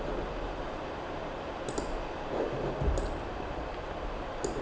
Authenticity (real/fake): real